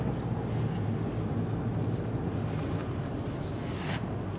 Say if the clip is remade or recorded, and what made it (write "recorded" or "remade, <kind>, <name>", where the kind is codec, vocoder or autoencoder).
recorded